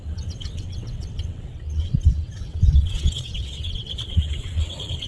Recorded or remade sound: remade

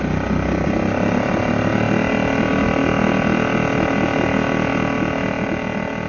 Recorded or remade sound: recorded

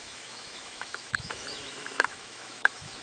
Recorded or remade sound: remade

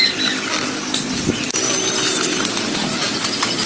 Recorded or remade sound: recorded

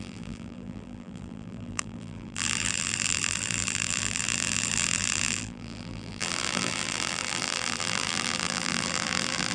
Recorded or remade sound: remade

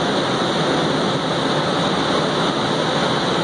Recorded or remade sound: recorded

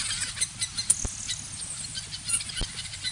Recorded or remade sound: recorded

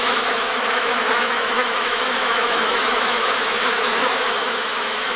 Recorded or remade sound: remade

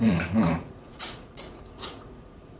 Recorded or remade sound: remade